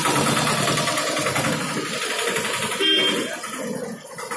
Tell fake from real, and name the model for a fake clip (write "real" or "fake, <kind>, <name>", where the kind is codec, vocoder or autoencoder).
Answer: real